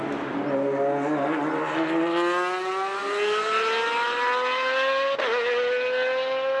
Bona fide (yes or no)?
yes